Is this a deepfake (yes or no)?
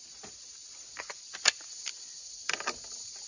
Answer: no